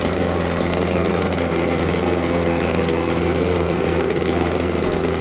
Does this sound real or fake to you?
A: fake